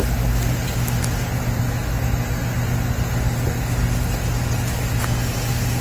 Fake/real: real